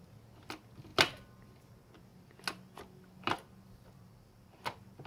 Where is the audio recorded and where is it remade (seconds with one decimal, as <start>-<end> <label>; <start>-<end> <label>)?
0.0-5.1 recorded